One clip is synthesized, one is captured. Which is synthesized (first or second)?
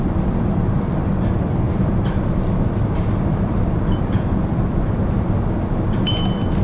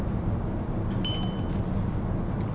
first